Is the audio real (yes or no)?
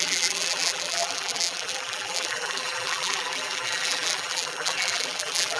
no